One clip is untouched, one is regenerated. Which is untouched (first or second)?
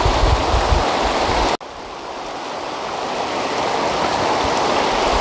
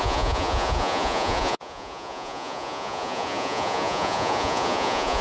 first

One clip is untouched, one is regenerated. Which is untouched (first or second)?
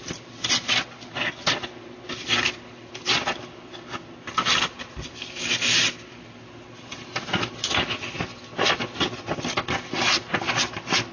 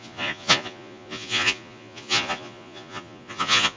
first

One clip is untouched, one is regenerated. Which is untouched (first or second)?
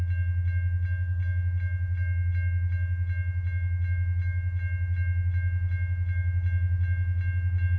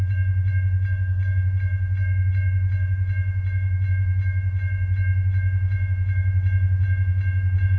first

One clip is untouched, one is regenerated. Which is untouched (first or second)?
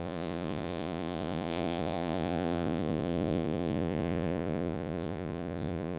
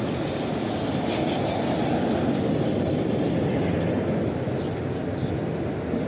second